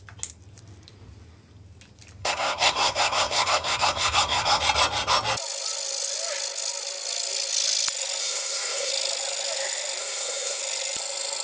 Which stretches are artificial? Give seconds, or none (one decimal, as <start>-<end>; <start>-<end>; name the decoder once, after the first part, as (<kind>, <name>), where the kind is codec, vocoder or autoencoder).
2.2-4.6 (codec, SNAC); 8.2-8.9; 10.0-10.6